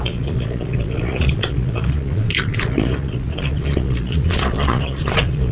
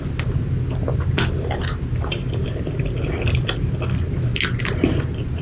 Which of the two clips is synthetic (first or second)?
first